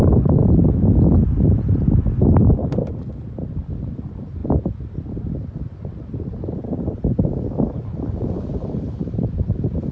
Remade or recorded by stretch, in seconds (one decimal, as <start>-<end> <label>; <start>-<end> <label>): 0.0-0.4 remade; 0.4-4.0 recorded; 4.0-4.4 remade; 4.4-7.9 recorded; 7.9-9.9 remade